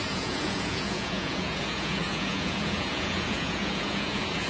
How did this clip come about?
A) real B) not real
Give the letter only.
B